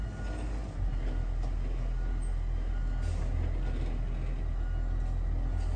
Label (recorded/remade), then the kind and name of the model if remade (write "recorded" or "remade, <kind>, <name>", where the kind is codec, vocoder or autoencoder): recorded